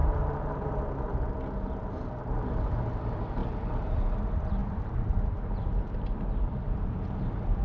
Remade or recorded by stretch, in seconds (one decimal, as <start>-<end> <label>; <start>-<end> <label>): 0.0-0.7 remade; 0.7-4.6 recorded; 4.6-7.6 remade